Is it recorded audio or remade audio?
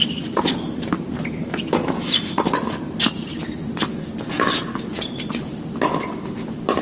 recorded